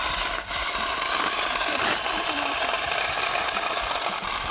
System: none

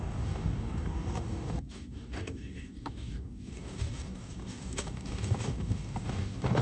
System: codec, DAC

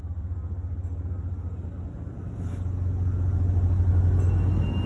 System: none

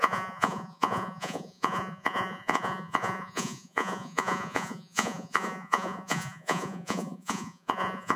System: vocoder, Vocos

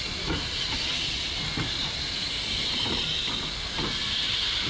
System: none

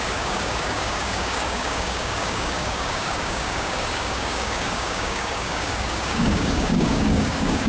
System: codec, DAC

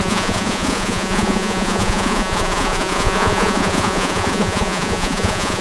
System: vocoder, Vocos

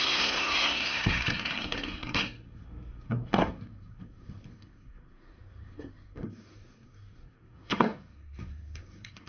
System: codec, SNAC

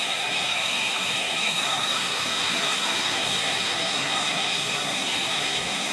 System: codec, SNAC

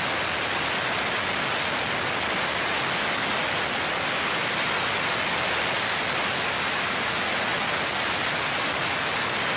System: none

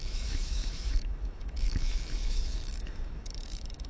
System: autoencoder, DAC-VAE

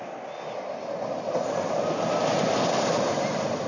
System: none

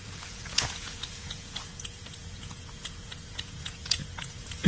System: vocoder, Vocos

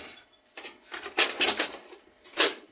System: none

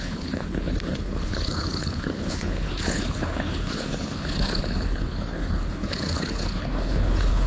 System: codec, HILCodec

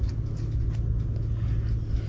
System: none